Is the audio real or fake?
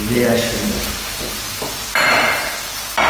real